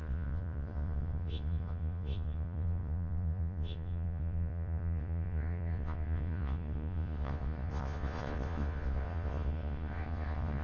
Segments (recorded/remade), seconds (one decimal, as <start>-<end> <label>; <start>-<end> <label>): 0.0-10.6 remade